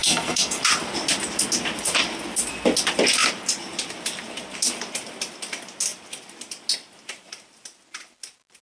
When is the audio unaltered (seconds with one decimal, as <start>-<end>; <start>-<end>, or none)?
0.6-8.7